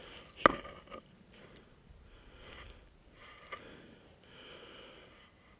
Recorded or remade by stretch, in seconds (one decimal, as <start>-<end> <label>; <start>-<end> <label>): 0.0-5.6 recorded